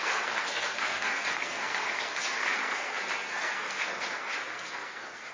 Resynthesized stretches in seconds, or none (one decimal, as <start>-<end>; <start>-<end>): 0.0-5.3